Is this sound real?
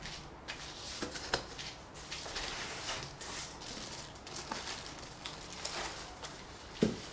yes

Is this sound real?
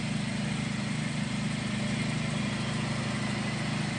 yes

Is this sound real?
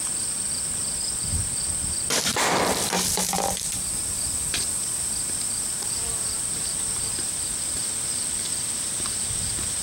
yes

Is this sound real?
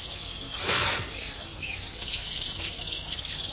no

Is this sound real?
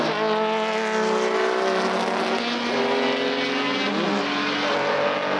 yes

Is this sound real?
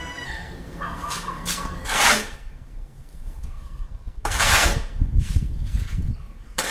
no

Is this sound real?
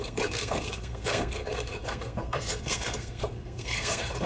no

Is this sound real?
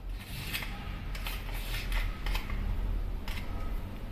yes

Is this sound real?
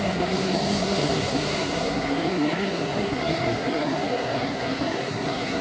no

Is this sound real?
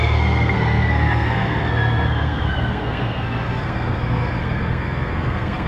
no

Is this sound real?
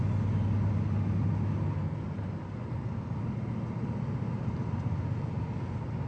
yes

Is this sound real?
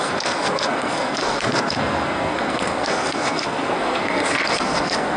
no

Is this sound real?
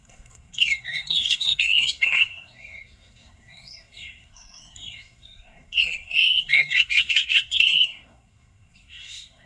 no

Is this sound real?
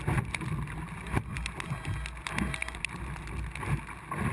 yes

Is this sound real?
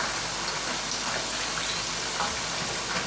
yes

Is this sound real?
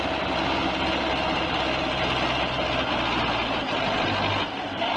yes